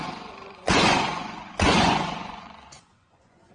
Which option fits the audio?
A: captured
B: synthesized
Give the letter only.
B